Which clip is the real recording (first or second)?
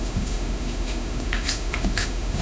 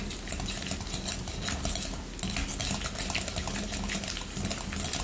second